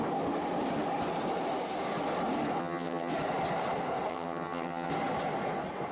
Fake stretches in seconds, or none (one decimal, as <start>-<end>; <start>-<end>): 2.6-3.1; 4.1-4.9